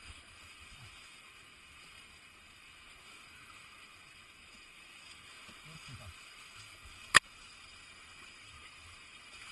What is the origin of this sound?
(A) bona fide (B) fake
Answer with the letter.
B